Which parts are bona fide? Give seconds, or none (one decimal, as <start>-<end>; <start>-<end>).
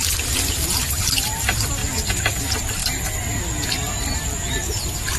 0.0-2.8; 3.4-5.2